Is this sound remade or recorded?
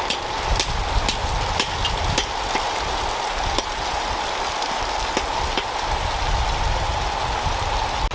recorded